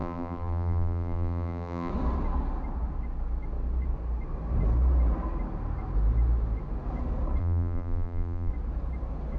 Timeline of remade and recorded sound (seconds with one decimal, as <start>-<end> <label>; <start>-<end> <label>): 0.0-1.9 remade; 1.9-7.4 recorded; 7.4-8.5 remade; 8.5-9.4 recorded